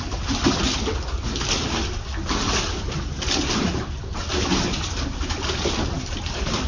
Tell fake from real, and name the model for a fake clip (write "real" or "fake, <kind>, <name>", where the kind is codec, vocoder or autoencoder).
real